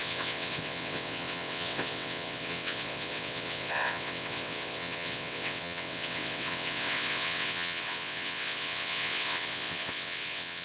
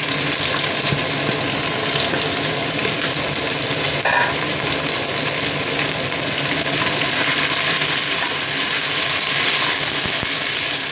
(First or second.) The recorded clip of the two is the second